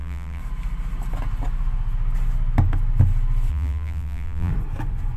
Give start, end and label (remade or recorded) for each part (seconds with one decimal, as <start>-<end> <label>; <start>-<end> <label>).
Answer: 0.0-0.4 remade; 0.4-3.5 recorded; 3.5-4.5 remade; 4.5-5.2 recorded